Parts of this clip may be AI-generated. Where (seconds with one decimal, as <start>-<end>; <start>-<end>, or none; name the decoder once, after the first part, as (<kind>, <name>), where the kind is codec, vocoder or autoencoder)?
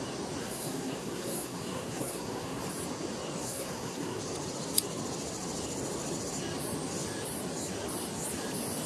0.4-2.6 (codec, SNAC); 3.4-4.2